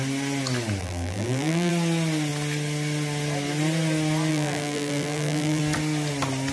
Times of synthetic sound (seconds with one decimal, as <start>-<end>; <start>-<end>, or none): 0.8-1.7; 4.3-5.6